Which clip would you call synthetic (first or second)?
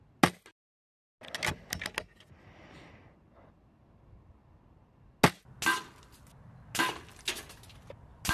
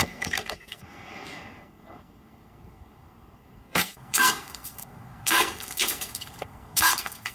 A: second